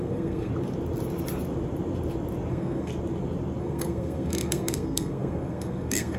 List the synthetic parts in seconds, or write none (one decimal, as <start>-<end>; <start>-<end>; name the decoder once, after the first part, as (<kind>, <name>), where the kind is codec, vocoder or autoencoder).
0.0-0.5 (codec, SNAC); 2.5-2.9; 3.6-6.2